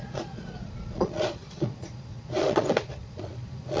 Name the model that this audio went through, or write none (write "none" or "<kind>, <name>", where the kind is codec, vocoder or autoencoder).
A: vocoder, Vocos